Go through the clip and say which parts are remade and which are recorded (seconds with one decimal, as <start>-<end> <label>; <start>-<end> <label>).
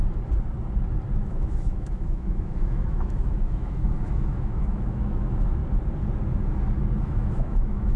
0.0-1.3 recorded; 1.3-5.6 remade; 5.6-7.0 recorded; 7.0-8.0 remade